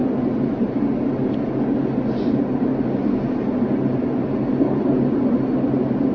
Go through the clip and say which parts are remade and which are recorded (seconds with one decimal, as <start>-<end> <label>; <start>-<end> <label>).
0.0-6.1 recorded